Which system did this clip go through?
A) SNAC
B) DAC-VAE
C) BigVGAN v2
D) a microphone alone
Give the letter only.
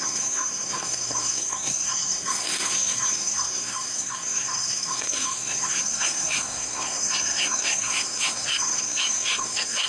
A